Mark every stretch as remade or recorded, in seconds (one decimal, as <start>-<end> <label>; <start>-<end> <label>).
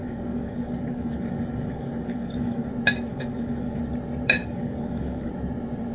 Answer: 0.0-2.7 remade; 2.7-3.1 recorded; 3.1-3.8 remade; 3.8-4.4 recorded; 4.4-5.3 remade; 5.3-5.9 recorded